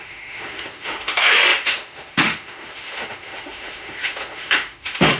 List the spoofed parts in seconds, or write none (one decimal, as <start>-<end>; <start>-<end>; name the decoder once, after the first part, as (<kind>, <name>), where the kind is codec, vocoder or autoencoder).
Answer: 0.0-5.2 (autoencoder, DAC-VAE)